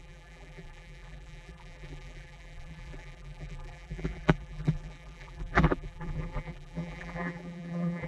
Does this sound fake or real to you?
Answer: fake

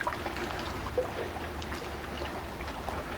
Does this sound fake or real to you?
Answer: real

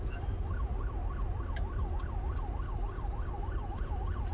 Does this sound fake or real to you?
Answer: real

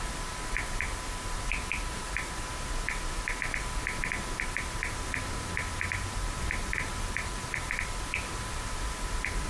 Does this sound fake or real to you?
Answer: fake